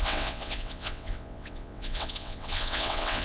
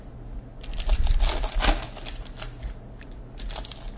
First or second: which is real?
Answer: second